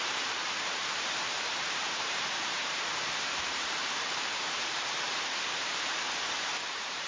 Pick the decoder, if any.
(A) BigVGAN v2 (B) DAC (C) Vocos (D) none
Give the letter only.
A